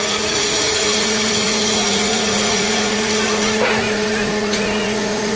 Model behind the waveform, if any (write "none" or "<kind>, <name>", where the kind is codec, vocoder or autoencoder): vocoder, Vocos